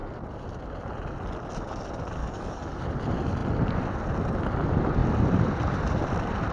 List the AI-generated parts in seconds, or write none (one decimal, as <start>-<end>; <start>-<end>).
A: 2.2-2.8